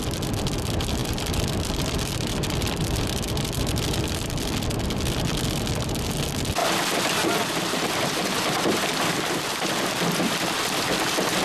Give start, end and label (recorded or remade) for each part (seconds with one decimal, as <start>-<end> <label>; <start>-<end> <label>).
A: 0.0-1.0 recorded; 1.0-5.4 remade; 5.4-11.4 recorded